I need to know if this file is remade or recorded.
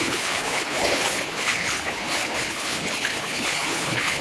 remade